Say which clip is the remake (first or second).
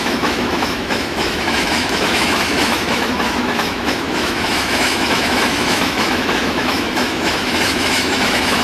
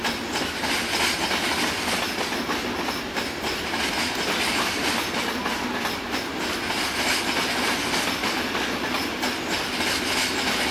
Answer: first